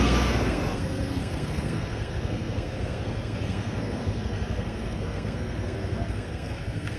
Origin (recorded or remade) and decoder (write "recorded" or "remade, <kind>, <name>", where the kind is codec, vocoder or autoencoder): remade, codec, SNAC